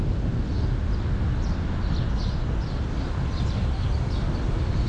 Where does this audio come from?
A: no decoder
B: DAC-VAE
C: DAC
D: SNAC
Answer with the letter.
A